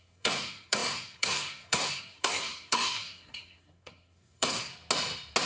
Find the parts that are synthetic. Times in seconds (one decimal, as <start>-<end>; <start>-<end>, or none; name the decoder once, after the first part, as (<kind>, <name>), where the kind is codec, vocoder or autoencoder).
0.0-4.7 (codec, SNAC)